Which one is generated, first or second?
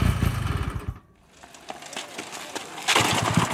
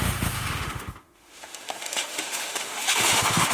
second